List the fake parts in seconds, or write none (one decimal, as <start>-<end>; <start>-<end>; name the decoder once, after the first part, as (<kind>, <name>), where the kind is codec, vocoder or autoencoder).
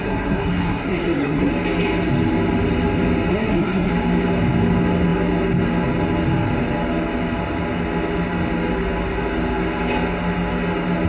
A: 0.0-1.5 (codec, SNAC); 3.3-3.9